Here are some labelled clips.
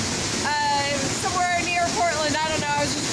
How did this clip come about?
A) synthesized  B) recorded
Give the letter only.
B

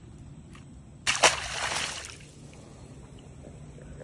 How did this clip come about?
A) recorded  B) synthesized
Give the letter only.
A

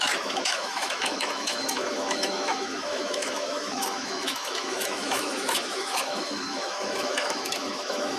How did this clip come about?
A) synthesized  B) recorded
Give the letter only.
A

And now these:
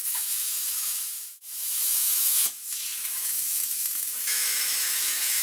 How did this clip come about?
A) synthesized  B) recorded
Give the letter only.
A